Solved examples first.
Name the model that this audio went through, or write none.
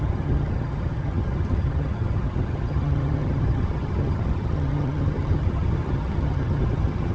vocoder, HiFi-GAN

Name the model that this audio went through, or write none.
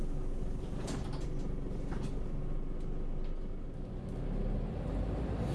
none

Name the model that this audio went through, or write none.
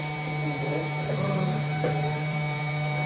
vocoder, BigVGAN v2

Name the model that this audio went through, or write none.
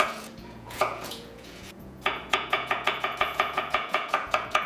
vocoder, Vocos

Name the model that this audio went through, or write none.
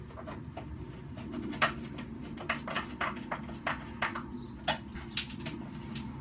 none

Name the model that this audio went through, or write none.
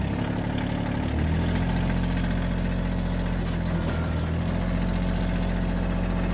none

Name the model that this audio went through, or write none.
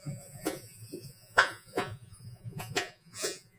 vocoder, Vocos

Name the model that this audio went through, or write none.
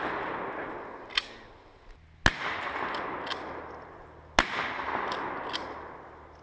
none